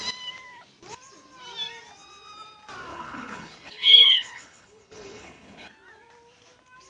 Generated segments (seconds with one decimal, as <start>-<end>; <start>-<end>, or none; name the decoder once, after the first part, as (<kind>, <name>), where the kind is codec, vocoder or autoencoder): 2.9-5.7 (codec, HILCodec)